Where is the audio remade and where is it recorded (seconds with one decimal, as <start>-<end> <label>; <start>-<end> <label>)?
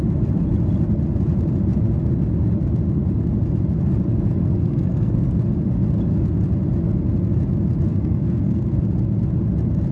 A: 0.0-4.4 recorded; 4.4-5.4 remade; 5.4-7.9 recorded; 7.9-8.8 remade; 8.8-9.9 recorded